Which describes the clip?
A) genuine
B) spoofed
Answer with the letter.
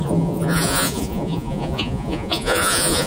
B